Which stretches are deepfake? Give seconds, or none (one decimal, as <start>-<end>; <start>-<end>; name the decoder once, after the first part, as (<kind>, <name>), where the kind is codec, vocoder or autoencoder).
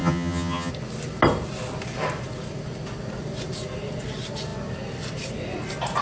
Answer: 0.0-0.7 (vocoder, HiFi-GAN)